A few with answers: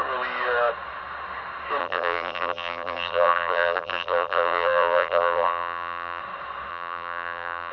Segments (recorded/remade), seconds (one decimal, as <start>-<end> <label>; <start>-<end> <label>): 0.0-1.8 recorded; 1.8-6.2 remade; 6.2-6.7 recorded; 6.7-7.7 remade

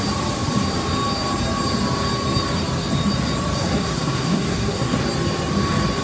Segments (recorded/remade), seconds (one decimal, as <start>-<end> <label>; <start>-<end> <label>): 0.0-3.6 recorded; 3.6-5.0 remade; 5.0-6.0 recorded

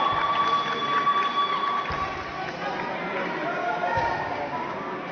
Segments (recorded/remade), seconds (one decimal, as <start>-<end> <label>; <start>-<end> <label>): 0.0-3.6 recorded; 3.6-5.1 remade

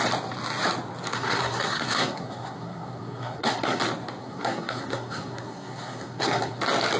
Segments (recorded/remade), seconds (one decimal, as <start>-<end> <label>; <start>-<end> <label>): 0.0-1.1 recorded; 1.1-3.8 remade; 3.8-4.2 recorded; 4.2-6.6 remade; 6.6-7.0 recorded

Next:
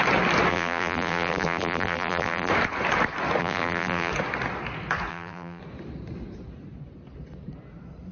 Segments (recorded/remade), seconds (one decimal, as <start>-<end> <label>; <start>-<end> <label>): 0.0-0.5 recorded; 0.5-2.5 remade; 2.5-3.4 recorded; 3.4-4.1 remade; 4.1-5.1 recorded; 5.1-5.6 remade; 5.6-8.1 recorded